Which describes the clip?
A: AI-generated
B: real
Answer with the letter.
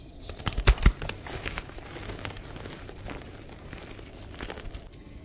B